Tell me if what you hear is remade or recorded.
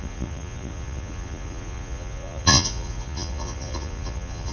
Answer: remade